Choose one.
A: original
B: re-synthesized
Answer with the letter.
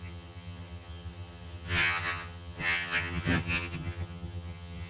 B